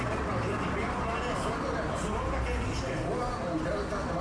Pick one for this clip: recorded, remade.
recorded